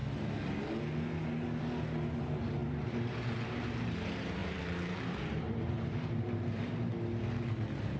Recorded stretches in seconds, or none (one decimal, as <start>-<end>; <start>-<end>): 0.0-2.2; 6.7-8.0